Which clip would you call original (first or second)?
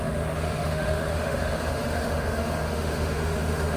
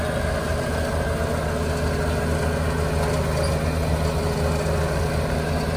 second